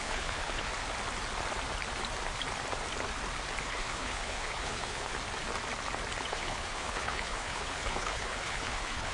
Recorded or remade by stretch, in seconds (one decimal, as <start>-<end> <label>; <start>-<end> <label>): 0.0-0.7 remade; 0.7-3.6 recorded; 3.6-5.1 remade; 5.1-6.3 recorded; 6.3-9.1 remade